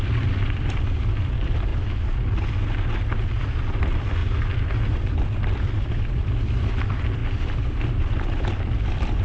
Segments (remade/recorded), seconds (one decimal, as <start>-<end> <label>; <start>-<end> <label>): 0.0-1.7 remade; 1.7-3.4 recorded; 3.4-4.2 remade; 4.2-5.4 recorded; 5.4-9.2 remade